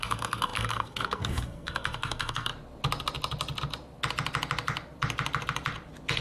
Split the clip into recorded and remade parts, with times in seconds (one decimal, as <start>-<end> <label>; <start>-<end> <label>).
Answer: 0.0-2.5 remade; 2.5-6.2 recorded